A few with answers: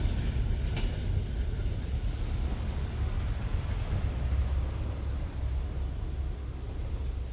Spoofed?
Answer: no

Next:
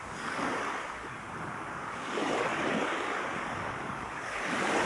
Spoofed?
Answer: yes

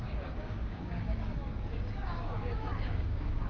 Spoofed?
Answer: yes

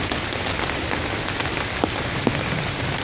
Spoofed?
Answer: no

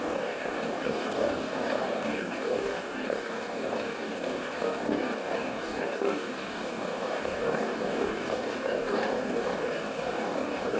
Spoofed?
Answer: yes